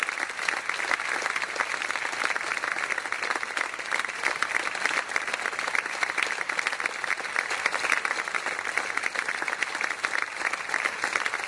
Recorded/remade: recorded